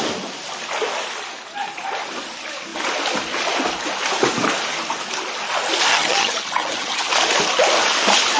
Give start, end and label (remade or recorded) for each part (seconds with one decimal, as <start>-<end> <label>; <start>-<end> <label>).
0.0-5.9 recorded; 5.9-7.1 remade; 7.1-8.4 recorded